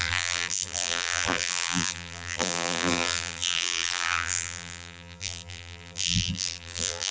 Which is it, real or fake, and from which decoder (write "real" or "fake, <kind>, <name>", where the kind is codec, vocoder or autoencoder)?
fake, vocoder, BigVGAN v2